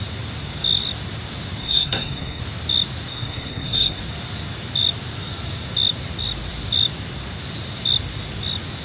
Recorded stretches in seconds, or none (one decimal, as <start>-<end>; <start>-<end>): 0.0-1.6; 2.4-3.1; 4.0-8.8

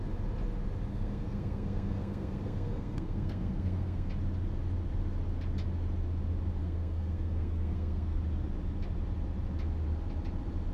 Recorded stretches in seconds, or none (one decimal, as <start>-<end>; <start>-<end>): 0.0-0.9; 4.1-6.6; 8.2-10.7